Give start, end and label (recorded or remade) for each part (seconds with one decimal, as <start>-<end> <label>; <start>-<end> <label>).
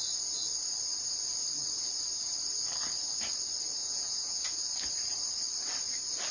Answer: 0.0-3.8 recorded; 3.8-4.4 remade; 4.4-6.3 recorded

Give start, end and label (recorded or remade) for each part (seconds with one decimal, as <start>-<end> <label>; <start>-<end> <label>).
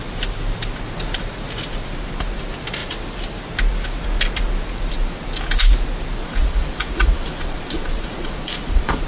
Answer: 0.0-6.2 recorded; 6.2-9.1 remade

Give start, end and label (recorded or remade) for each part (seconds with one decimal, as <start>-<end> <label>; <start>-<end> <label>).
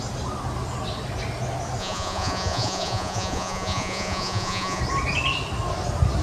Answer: 0.0-1.8 recorded; 1.8-4.8 remade; 4.8-6.2 recorded